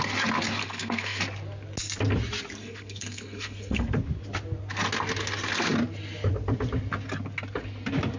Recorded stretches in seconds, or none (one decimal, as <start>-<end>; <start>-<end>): 0.0-0.6; 1.2-2.6; 3.9-8.2